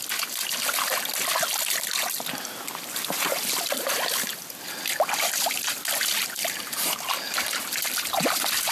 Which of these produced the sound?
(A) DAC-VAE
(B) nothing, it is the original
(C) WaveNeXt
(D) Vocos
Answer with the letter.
B